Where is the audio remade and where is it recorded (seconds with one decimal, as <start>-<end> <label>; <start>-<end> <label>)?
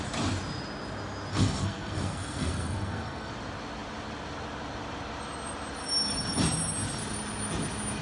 0.0-1.3 recorded; 1.3-3.3 remade; 3.3-8.0 recorded